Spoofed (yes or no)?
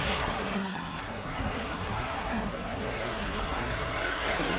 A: yes